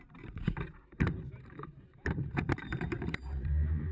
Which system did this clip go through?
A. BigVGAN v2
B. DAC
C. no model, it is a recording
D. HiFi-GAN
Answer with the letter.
A